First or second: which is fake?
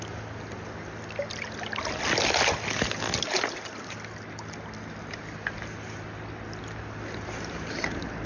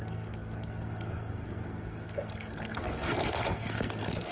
second